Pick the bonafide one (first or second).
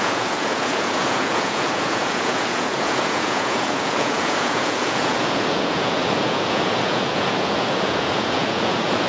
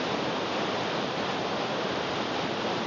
second